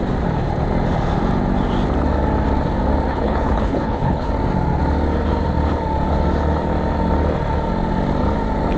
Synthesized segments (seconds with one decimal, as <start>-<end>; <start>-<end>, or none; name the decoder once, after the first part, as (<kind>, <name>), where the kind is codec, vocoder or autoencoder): 3.1-4.3 (codec, HILCodec)